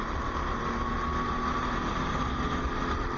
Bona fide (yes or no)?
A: yes